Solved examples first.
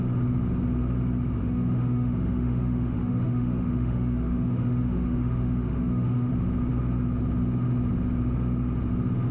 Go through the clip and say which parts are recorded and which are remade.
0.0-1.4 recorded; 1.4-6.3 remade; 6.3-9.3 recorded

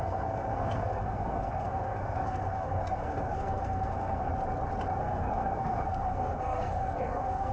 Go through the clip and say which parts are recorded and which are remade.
0.0-4.3 remade; 4.3-5.0 recorded; 5.0-7.5 remade

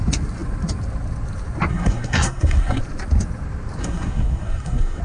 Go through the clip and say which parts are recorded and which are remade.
0.0-1.7 recorded; 1.7-2.8 remade; 2.8-3.8 recorded; 3.8-5.0 remade

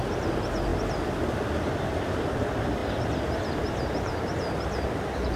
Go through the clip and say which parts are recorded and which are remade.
0.0-0.7 recorded; 0.7-2.0 remade; 2.0-5.4 recorded

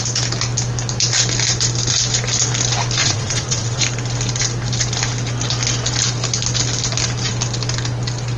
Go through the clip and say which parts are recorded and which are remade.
0.0-3.0 recorded; 3.0-3.8 remade; 3.8-8.4 recorded